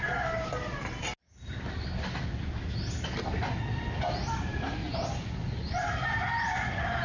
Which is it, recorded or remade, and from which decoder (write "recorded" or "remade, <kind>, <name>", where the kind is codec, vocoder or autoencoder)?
recorded